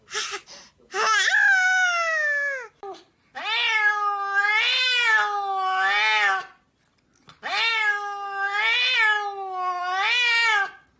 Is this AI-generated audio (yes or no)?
no